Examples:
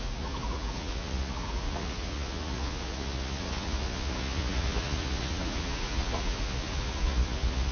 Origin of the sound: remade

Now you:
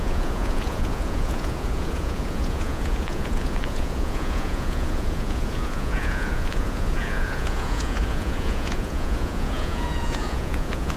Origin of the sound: remade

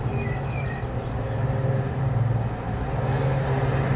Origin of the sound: recorded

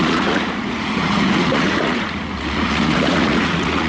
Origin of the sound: remade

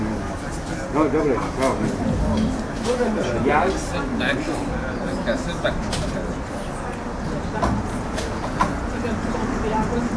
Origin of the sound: recorded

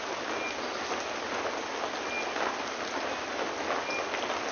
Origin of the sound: recorded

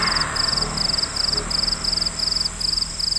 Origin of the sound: recorded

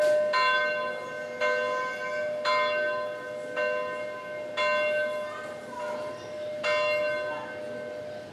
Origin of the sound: recorded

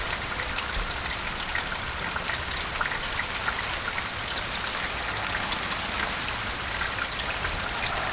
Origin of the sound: recorded